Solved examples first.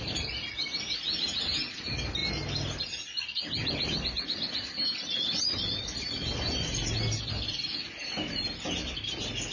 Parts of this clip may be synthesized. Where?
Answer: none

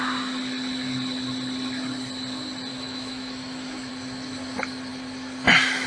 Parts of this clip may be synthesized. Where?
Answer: 2.7-3.9 (autoencoder, DAC-VAE)

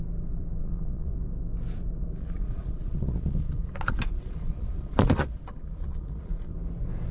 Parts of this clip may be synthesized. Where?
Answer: 0.6-1.1 (vocoder, Vocos); 2.2-6.5

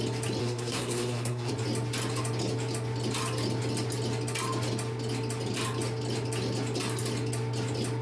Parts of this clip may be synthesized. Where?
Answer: 0.4-1.5 (codec, SNAC)

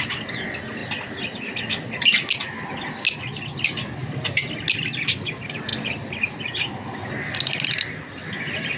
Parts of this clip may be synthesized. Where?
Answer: none

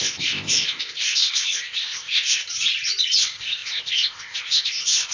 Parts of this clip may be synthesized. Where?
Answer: 0.0-2.4 (codec, ZipCodec); 3.2-5.1

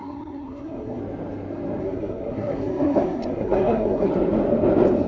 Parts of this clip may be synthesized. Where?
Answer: 0.0-1.0 (codec, SNAC); 1.8-4.1